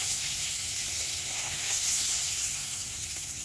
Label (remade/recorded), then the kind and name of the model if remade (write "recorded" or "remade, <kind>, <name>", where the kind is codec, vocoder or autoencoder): remade, codec, SNAC